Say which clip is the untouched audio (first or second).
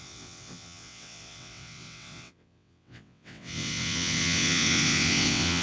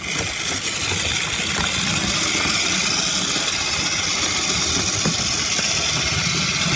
second